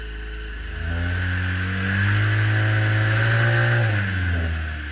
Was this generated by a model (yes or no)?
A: no